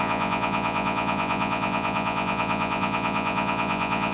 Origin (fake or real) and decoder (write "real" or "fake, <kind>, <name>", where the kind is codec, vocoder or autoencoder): fake, vocoder, Vocos